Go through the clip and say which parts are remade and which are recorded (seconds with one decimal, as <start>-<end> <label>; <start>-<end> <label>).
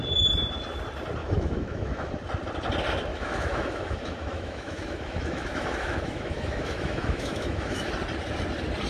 0.0-1.2 recorded; 1.2-2.1 remade; 2.1-3.1 recorded; 3.1-7.9 remade; 7.9-8.9 recorded